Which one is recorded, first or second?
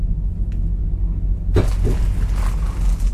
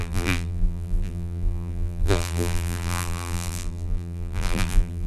first